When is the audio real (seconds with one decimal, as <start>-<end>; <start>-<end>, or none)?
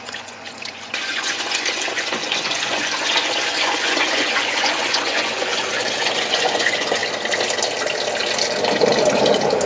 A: 7.0-9.7